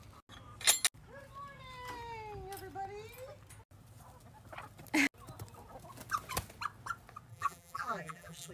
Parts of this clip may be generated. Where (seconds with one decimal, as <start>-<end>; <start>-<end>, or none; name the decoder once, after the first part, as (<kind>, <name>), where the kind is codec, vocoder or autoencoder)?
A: 7.3-8.5 (vocoder, BigVGAN v2)